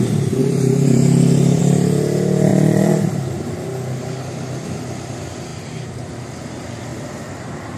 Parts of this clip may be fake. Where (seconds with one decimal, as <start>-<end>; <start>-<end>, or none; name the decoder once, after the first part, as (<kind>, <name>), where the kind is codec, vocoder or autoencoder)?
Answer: 0.4-1.6 (vocoder, BigVGAN v2); 2.5-3.5; 5.5-6.1; 6.9-7.8